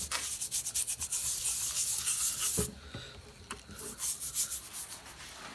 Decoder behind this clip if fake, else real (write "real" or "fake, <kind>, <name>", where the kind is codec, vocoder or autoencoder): real